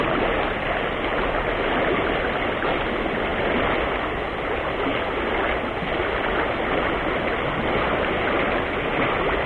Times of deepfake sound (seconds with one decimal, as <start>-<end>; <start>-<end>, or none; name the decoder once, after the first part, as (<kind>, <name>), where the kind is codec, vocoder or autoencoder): none